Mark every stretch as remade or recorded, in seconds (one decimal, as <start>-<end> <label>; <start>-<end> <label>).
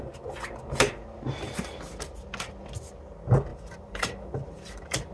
0.0-3.5 recorded; 3.5-5.1 remade